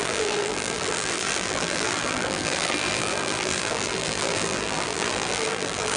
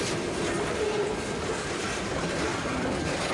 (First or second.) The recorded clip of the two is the second